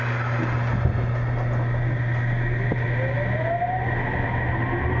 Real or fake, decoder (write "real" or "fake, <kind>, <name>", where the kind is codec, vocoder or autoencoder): real